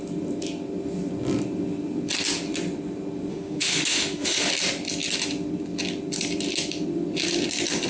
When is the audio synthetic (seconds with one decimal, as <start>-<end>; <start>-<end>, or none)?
3.3-4.5